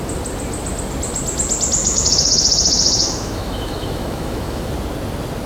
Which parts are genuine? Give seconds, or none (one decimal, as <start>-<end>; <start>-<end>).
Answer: 0.0-1.8; 4.7-5.5